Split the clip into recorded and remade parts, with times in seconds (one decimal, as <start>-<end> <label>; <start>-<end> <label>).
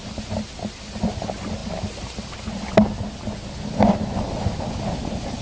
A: 0.0-5.4 recorded